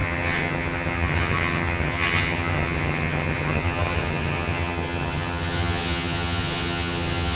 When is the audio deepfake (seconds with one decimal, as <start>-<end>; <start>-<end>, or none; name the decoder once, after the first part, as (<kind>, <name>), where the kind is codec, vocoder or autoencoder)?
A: 0.0-7.4 (vocoder, HiFi-GAN)